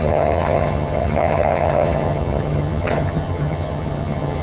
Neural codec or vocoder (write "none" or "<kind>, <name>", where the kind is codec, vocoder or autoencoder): vocoder, HiFi-GAN